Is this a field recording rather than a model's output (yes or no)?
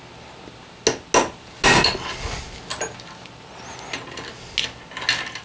yes